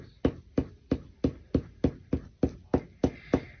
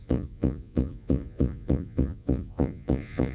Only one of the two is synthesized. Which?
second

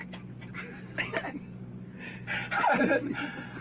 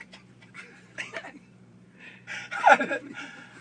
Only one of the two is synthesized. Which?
second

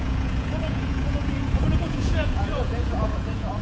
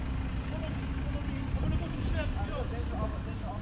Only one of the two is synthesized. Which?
first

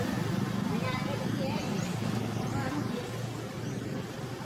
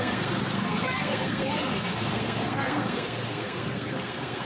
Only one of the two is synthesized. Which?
second